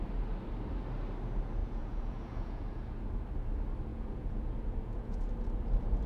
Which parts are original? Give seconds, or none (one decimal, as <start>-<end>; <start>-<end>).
0.0-1.6; 3.1-3.9; 5.3-6.1